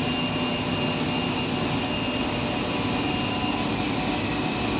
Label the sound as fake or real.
real